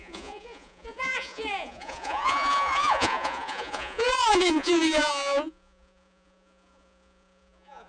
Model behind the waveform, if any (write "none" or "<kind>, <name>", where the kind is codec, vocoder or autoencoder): vocoder, Vocos